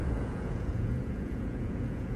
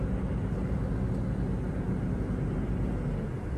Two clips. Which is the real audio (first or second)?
second